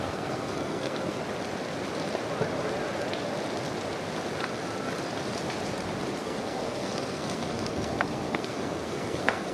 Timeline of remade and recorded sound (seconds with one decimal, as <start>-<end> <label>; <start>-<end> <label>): 0.0-1.2 remade; 1.2-6.2 recorded; 6.2-9.5 remade